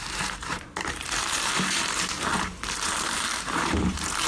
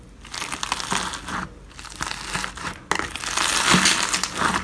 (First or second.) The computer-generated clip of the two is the first